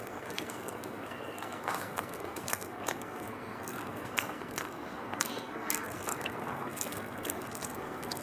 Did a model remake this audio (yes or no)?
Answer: yes